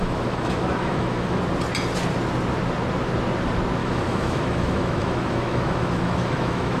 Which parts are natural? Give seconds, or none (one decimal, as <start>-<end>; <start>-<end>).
1.4-3.8